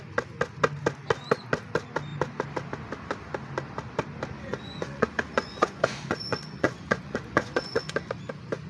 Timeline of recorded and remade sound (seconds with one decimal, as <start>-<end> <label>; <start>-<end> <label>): 0.0-4.5 recorded; 4.5-7.9 remade; 7.9-8.7 recorded